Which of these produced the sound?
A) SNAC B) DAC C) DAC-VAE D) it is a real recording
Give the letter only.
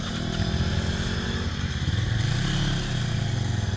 D